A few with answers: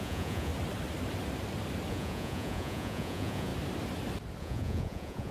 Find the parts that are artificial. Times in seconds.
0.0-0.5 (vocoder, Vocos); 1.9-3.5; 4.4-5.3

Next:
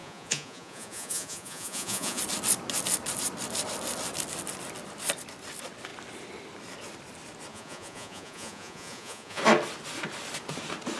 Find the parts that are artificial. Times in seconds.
0.0-2.2 (vocoder, Vocos); 7.5-9.4

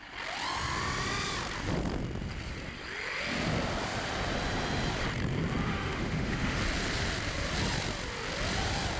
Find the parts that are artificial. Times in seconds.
5.7-6.6 (autoencoder, DAC-VAE)

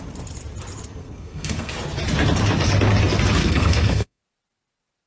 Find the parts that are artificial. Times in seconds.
1.0-1.7 (codec, SNAC); 3.4-4.2

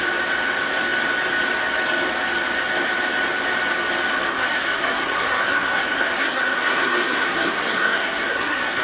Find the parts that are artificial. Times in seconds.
4.3-8.8 (codec, SNAC)

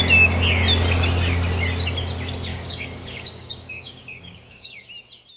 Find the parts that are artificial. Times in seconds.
2.5-4.9 (codec, DAC)

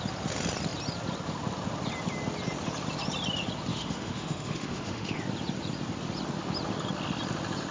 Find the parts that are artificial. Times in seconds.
3.7-5.2 (autoencoder, DAC-VAE)

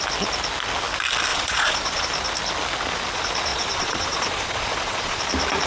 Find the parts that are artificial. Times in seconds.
1.3-2.0 (vocoder, Vocos); 3.5-5.2